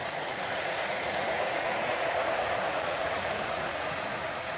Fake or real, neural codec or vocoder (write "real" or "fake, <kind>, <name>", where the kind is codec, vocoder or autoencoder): fake, vocoder, Vocos